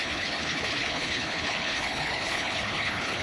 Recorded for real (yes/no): no